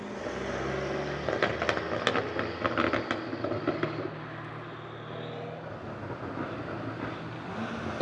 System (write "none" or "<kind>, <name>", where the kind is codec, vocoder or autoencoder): none